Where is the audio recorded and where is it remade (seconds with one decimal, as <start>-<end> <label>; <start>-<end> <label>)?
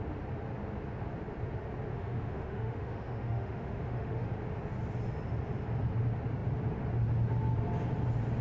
0.0-1.9 recorded; 1.9-4.3 remade; 4.3-8.4 recorded